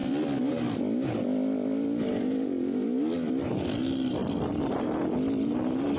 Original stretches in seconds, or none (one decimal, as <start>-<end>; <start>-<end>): 0.0-6.0